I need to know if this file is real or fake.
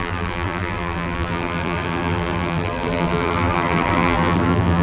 fake